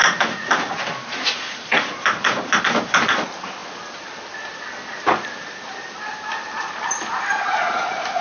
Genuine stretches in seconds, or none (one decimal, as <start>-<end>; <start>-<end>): 0.0-8.2